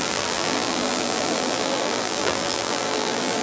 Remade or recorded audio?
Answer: remade